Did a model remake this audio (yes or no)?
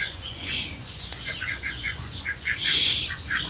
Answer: yes